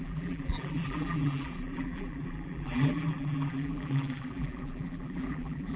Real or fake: fake